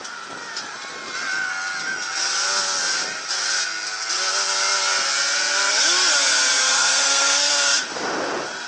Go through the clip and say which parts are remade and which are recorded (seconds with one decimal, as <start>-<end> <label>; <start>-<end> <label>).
0.0-6.6 recorded; 6.6-7.5 remade; 7.5-8.7 recorded